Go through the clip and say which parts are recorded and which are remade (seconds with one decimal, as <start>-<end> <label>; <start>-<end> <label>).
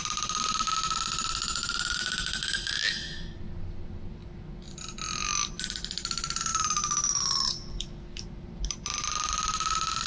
0.0-10.1 recorded